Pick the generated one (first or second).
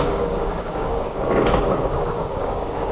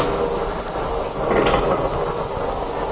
first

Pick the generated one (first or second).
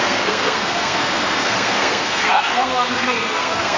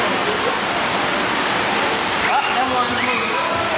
first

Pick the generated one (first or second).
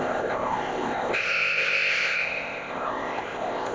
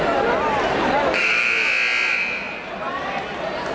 first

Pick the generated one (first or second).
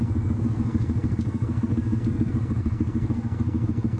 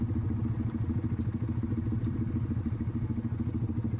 first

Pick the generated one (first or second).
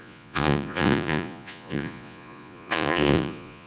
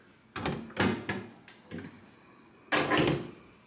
first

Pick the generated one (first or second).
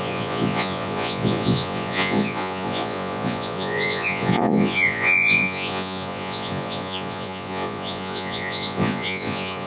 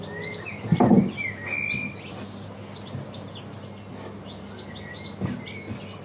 first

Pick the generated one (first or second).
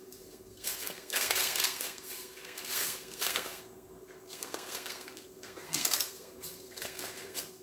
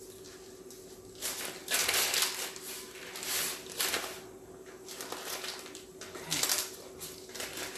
first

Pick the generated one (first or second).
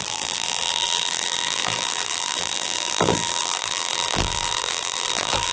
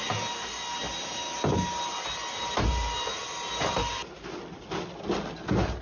first